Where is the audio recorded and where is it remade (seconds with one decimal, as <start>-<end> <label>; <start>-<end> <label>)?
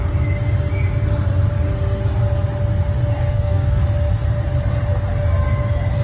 0.0-3.2 recorded; 3.2-3.8 remade; 3.8-6.0 recorded